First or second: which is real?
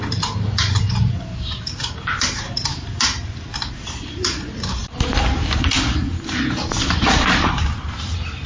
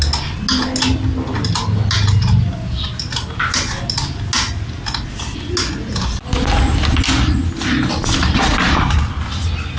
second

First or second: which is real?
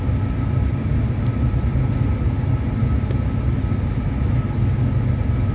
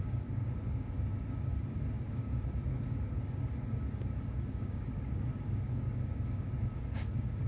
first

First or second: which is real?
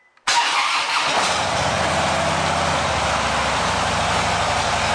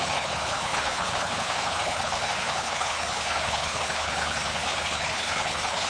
first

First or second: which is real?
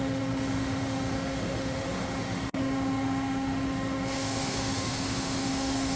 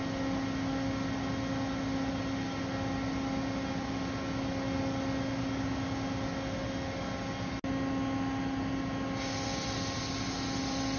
second